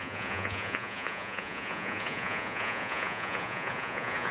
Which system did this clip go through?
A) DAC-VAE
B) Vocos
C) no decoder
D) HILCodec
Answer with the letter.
B